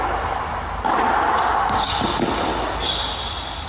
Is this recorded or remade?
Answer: recorded